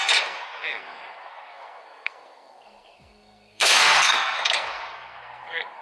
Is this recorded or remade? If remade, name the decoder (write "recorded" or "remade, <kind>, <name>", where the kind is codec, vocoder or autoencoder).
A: remade, codec, SNAC